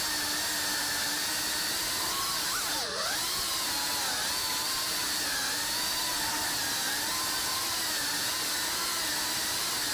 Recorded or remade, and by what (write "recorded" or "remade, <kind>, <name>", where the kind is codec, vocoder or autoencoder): remade, vocoder, BigVGAN v2